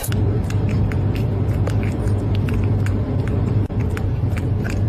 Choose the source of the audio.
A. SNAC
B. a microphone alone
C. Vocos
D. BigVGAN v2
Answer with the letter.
D